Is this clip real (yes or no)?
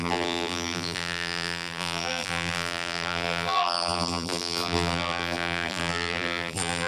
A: no